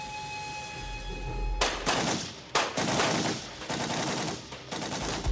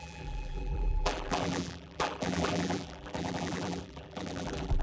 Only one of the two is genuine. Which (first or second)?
first